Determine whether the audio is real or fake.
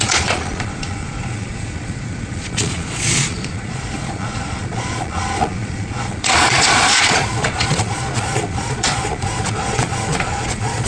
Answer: fake